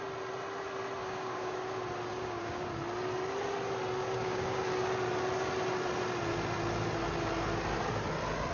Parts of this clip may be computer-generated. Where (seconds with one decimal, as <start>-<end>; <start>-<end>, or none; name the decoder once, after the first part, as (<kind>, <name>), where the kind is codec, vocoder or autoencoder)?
1.0-1.7 (codec, DAC); 2.1-2.7; 4.0-4.6